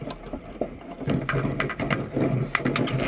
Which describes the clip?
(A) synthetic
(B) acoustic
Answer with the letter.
B